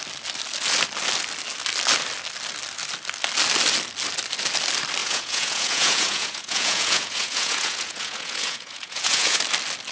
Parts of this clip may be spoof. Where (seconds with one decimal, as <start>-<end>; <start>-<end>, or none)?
5.0-9.4

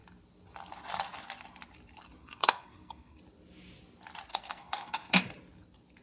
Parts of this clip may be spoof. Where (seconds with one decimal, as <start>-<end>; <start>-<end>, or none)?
2.2-3.2; 4.3-5.2

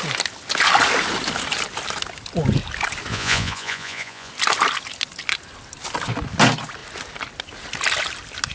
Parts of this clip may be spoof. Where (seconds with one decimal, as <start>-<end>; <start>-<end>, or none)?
3.1-4.3

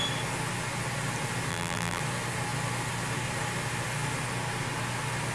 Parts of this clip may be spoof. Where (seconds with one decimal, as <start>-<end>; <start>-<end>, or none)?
1.5-2.0

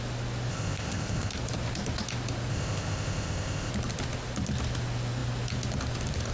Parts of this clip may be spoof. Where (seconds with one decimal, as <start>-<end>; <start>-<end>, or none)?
0.5-1.3; 2.5-3.7

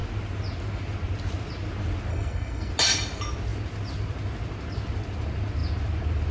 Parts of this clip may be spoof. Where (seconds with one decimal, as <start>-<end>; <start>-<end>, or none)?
2.1-2.7

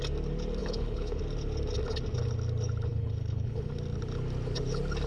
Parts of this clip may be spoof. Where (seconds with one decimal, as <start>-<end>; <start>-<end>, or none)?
0.6-1.2; 2.9-3.7